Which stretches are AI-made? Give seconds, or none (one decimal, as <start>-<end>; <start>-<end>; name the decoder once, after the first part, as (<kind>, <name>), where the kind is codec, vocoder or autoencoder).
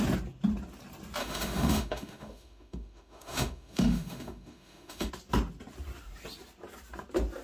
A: 1.2-5.1 (autoencoder, DAC-VAE)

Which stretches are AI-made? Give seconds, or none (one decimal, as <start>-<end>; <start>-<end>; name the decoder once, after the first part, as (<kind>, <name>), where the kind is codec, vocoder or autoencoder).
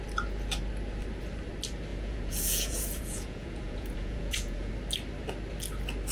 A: 1.9-4.7 (vocoder, Vocos)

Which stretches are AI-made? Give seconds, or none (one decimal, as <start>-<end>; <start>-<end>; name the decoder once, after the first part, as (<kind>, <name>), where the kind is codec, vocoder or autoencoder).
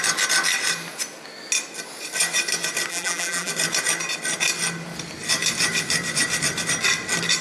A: 2.9-3.5 (vocoder, BigVGAN v2)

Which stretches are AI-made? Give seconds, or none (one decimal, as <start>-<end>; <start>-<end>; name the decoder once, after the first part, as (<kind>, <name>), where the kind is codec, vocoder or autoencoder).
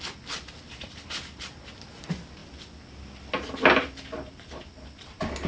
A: none